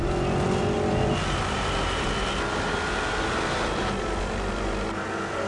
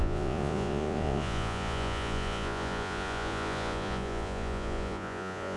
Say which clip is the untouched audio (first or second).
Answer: first